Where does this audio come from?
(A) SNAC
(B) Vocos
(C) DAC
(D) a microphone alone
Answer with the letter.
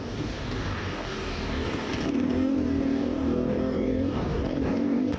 C